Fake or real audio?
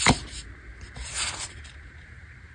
fake